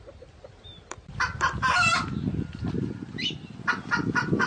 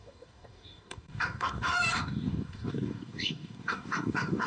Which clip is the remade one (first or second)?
second